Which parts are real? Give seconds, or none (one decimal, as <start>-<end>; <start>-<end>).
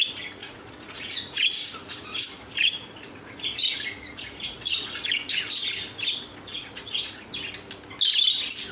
0.0-0.4; 5.4-6.5; 7.3-8.7